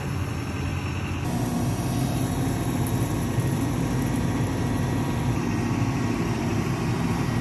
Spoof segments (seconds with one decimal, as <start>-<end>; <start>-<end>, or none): 0.0-0.7; 5.1-7.4